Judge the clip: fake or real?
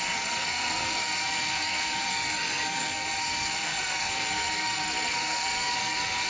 fake